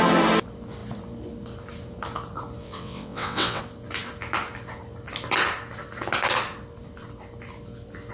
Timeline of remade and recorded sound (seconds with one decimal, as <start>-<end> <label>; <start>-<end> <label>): 0.0-2.6 recorded; 2.6-3.6 remade; 3.6-8.1 recorded